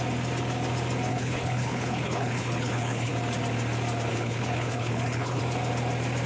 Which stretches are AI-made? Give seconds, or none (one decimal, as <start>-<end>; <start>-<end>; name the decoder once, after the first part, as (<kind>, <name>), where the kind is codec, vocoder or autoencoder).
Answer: 1.1-3.1 (codec, HILCodec); 4.1-5.4